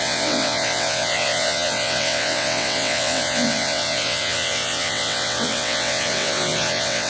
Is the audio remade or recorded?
remade